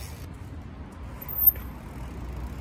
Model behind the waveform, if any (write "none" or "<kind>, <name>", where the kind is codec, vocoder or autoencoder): none